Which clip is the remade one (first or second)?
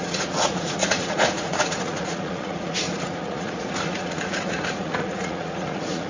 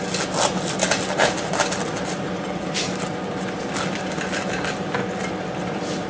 first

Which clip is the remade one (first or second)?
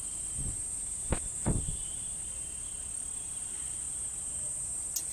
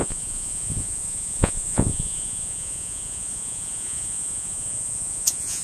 second